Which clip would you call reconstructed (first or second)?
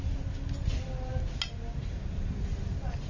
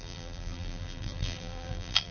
second